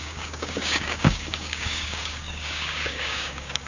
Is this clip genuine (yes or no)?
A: no